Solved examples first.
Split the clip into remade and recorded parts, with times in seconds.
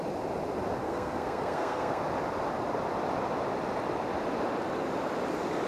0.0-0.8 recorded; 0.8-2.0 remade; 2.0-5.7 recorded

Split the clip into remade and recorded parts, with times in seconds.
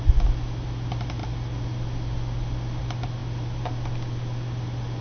0.0-5.0 recorded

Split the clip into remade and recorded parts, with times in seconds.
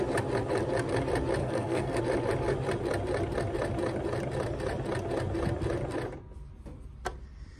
0.0-1.4 recorded; 1.4-2.0 remade; 2.0-7.6 recorded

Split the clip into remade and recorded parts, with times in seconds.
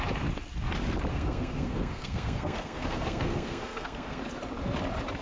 0.0-1.1 recorded; 1.1-4.2 remade; 4.2-5.2 recorded